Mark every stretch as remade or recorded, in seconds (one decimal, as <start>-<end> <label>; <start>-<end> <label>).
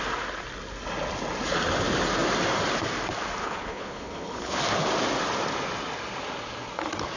0.0-3.4 recorded; 3.4-4.6 remade; 4.6-7.2 recorded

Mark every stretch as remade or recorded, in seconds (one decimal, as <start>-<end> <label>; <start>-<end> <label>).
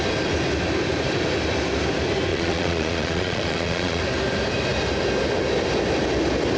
0.0-2.3 recorded; 2.3-4.0 remade; 4.0-6.6 recorded